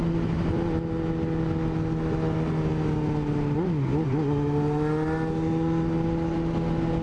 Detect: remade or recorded recorded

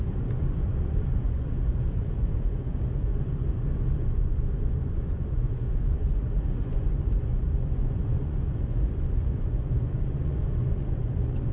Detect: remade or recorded remade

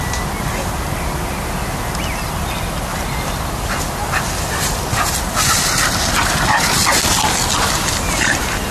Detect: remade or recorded recorded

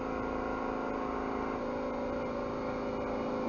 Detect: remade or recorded recorded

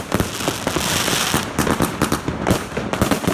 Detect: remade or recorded recorded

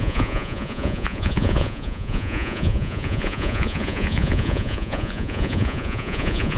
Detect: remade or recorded remade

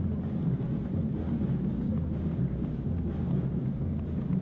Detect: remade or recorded recorded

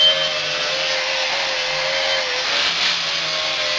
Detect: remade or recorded recorded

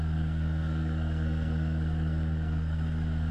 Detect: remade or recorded remade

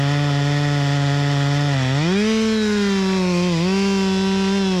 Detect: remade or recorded recorded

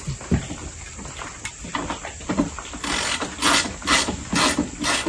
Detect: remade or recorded recorded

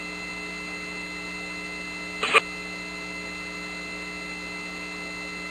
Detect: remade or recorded recorded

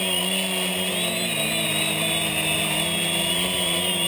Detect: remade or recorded recorded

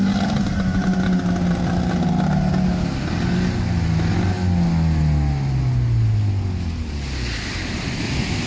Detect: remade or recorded recorded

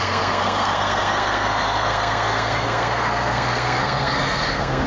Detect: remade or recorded remade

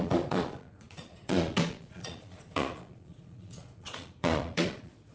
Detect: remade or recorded remade